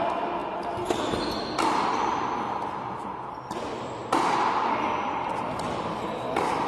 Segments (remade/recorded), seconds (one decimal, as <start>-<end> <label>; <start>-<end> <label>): 0.0-6.7 recorded